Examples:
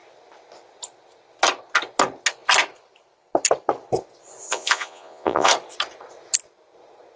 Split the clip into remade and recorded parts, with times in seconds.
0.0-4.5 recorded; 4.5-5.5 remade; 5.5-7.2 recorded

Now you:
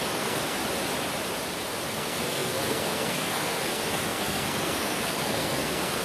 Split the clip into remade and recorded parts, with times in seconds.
0.0-0.6 remade; 0.6-1.9 recorded; 1.9-6.0 remade

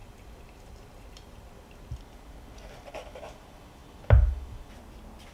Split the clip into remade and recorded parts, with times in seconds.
0.0-3.2 remade; 3.2-5.3 recorded